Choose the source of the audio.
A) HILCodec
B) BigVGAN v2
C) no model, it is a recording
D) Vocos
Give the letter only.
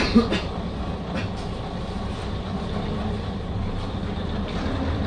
C